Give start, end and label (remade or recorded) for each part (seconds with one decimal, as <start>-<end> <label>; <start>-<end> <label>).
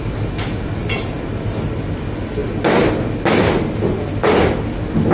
0.0-0.8 recorded; 0.8-2.0 remade; 2.0-5.1 recorded